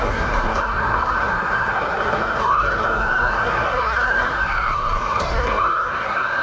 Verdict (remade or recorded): remade